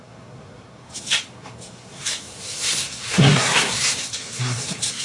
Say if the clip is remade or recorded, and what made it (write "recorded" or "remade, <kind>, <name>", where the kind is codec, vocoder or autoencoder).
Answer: remade, codec, SNAC